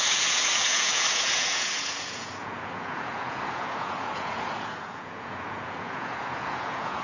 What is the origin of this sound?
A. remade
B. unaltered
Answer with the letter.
A